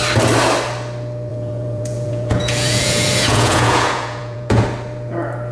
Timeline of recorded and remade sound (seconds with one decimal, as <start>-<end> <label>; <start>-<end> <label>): 0.0-1.3 recorded; 1.3-4.6 remade; 4.6-5.5 recorded